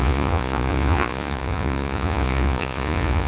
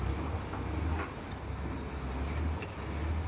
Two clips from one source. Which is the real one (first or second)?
second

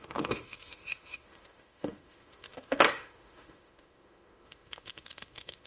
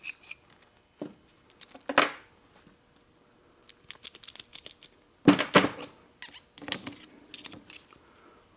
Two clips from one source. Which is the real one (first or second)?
second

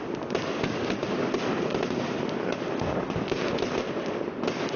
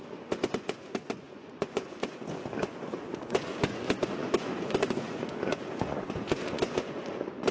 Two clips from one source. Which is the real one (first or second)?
first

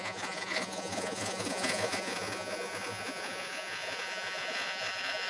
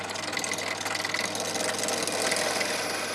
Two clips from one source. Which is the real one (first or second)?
second